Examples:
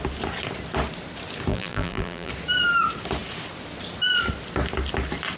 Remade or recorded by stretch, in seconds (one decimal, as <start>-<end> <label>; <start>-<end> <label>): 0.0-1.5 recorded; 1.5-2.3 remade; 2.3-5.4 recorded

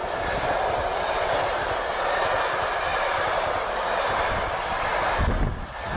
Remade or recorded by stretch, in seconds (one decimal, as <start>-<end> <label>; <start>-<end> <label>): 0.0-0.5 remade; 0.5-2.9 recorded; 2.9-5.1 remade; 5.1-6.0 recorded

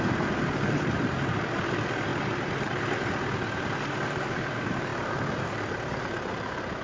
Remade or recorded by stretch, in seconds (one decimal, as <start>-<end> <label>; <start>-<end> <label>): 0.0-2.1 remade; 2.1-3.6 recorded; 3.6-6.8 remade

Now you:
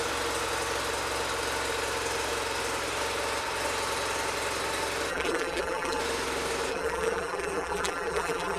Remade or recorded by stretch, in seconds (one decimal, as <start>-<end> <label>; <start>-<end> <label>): 0.0-5.1 recorded; 5.1-6.0 remade; 6.0-6.7 recorded; 6.7-8.6 remade

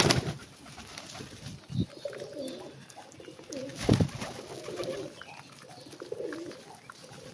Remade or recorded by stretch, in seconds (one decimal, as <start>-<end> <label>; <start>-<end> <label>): 0.0-7.3 recorded

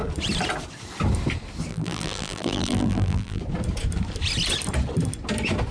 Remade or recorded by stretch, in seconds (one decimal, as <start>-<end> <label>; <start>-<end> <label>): 0.0-1.7 recorded; 1.7-3.4 remade; 3.4-5.7 recorded

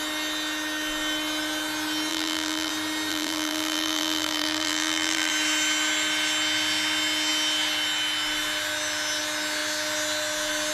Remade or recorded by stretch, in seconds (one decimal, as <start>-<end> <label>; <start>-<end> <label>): 0.0-2.1 recorded; 2.1-2.7 remade; 2.7-3.1 recorded; 3.1-5.3 remade; 5.3-10.7 recorded

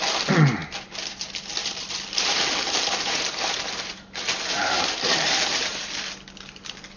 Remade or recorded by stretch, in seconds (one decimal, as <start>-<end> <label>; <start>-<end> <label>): 0.0-1.6 recorded; 1.6-5.8 remade; 5.8-7.0 recorded